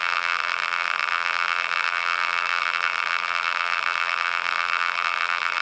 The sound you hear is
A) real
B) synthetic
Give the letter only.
B